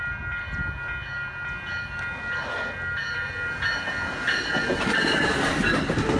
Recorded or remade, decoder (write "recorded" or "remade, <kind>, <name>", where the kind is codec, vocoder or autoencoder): recorded